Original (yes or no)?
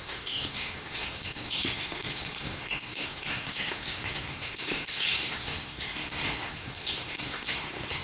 no